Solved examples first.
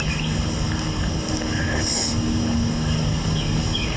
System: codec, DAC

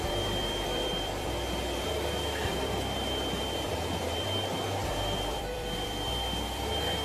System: vocoder, BigVGAN v2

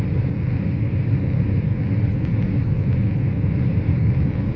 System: none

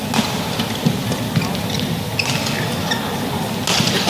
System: none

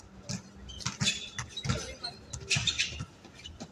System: none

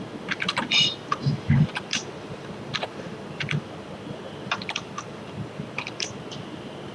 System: vocoder, BigVGAN v2